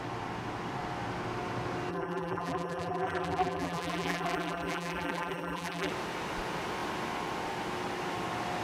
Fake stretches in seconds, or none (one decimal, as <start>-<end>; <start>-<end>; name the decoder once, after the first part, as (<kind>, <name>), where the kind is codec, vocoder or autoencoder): 1.9-5.9 (vocoder, BigVGAN v2)